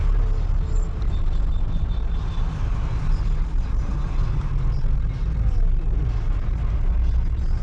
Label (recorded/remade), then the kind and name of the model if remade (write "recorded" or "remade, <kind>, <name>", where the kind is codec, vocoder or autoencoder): recorded